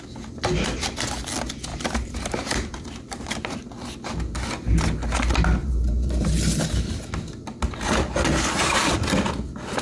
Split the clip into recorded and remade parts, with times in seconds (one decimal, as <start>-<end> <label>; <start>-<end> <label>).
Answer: 0.0-1.7 recorded; 1.7-3.3 remade; 3.3-5.6 recorded; 5.6-6.3 remade; 6.3-9.8 recorded